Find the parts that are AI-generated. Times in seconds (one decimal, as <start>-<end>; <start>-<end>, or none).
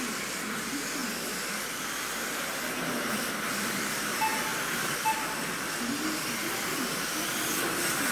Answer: 1.0-2.1